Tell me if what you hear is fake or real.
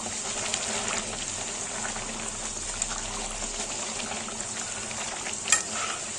real